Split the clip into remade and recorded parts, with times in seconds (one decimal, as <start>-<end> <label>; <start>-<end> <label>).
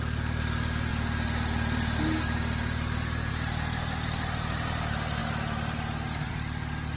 0.0-7.0 recorded